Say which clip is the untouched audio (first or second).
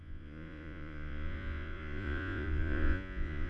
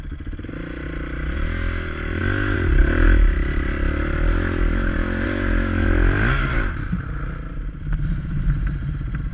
second